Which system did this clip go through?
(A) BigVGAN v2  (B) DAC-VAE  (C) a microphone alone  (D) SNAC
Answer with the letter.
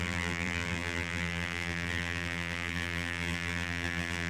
A